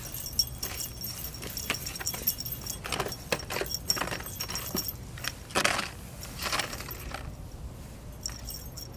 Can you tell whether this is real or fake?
real